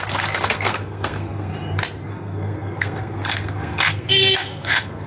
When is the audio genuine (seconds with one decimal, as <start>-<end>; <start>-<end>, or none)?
1.5-2.1